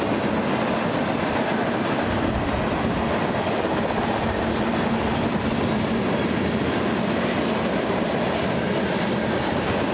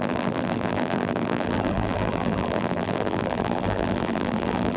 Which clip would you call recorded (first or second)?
first